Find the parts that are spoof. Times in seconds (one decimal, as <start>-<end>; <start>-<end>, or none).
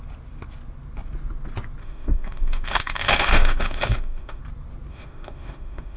1.8-4.4; 4.9-6.0